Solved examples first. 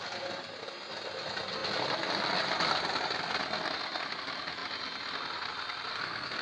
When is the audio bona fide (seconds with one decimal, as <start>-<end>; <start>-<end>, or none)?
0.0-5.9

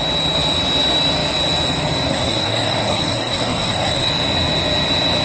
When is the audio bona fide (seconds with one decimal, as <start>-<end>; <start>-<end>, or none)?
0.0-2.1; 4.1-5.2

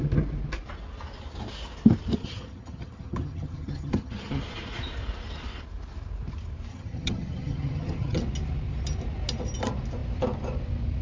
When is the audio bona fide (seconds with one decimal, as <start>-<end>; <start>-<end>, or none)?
0.0-2.2; 4.4-6.7; 8.2-11.0

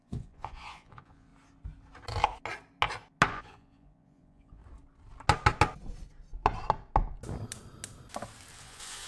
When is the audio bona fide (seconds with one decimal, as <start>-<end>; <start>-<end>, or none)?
1.3-3.3; 4.6-8.6